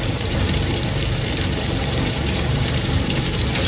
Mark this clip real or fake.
fake